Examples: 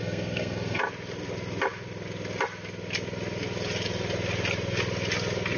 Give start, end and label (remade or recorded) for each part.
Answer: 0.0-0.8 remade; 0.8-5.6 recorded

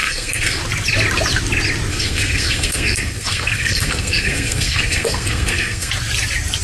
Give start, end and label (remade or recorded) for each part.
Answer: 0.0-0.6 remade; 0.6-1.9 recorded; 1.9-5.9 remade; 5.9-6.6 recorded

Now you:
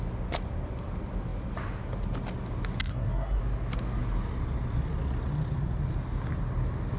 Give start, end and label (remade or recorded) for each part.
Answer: 0.0-2.9 recorded; 2.9-3.4 remade; 3.4-7.0 recorded

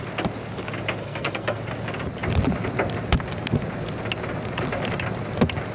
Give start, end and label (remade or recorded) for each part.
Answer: 0.0-1.0 recorded; 1.0-1.6 remade; 1.6-5.7 recorded

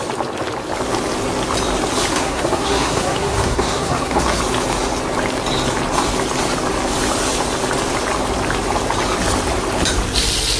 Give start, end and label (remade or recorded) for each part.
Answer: 0.0-2.1 recorded; 2.1-4.4 remade; 4.4-10.6 recorded

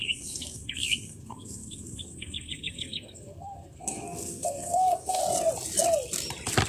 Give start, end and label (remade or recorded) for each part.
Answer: 0.0-5.2 remade; 5.2-6.7 recorded